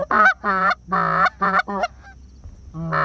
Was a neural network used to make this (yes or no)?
no